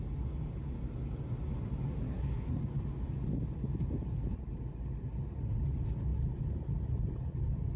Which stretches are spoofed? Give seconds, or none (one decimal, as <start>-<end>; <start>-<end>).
2.0-2.6